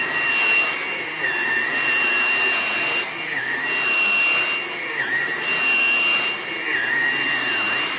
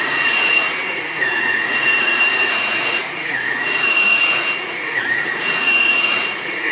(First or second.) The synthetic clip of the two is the second